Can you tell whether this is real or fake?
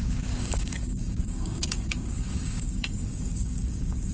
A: fake